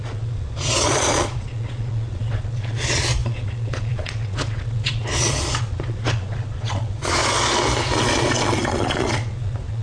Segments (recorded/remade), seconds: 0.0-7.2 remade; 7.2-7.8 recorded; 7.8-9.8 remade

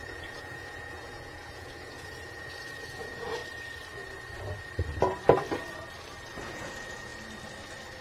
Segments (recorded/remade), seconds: 0.0-3.4 remade; 3.4-6.4 recorded; 6.4-7.1 remade; 7.1-8.0 recorded

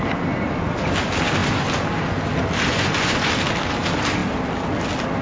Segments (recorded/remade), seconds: 0.0-2.7 recorded; 2.7-3.3 remade; 3.3-5.2 recorded